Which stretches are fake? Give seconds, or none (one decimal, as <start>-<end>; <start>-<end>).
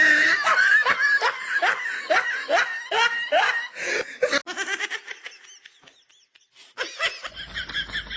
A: none